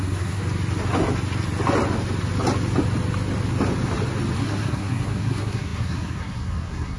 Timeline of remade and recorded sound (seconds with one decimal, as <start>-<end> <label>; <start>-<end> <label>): 0.0-0.4 remade; 0.4-4.4 recorded; 4.4-7.0 remade

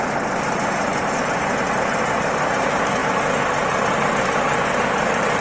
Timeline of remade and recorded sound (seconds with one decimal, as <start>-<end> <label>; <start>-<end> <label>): 0.0-5.4 recorded

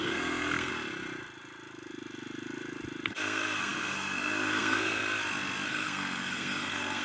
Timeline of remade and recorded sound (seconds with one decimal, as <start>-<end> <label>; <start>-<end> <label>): 0.0-0.7 remade; 0.7-3.1 recorded; 3.1-5.0 remade; 5.0-5.7 recorded; 5.7-7.0 remade

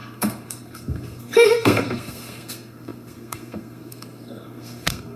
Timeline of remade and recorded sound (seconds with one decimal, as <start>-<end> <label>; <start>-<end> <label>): 0.0-5.2 remade

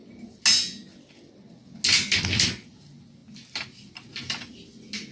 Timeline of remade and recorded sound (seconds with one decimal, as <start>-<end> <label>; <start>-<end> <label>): 0.0-5.1 recorded

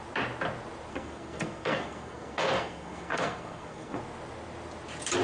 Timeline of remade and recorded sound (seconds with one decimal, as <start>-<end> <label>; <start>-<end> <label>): 0.0-0.9 recorded; 0.9-4.0 remade; 4.0-5.2 recorded

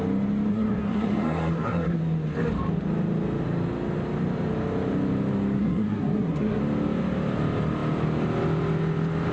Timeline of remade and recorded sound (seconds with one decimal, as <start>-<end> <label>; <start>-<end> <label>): 0.0-0.5 recorded; 0.5-2.0 remade; 2.0-5.6 recorded; 5.6-6.6 remade; 6.6-9.3 recorded

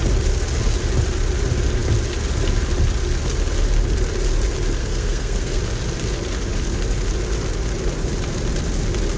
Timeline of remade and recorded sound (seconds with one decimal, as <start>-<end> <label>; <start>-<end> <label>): 0.0-4.8 recorded; 4.8-5.6 remade; 5.6-9.2 recorded